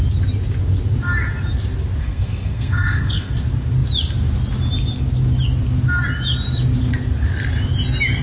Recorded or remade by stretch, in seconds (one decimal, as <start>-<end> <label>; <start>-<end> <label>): 0.0-2.0 recorded; 2.0-3.3 remade; 3.3-8.2 recorded